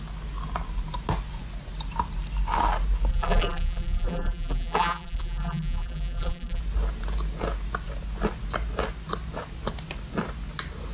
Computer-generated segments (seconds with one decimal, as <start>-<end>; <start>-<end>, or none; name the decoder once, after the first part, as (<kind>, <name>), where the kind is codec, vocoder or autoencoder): 3.1-6.6 (vocoder, BigVGAN v2)